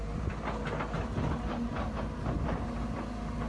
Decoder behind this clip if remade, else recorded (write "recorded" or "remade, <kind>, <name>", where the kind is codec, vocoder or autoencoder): recorded